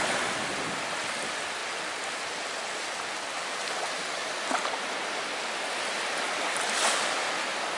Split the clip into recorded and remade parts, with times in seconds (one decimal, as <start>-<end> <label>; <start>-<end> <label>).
0.0-7.8 recorded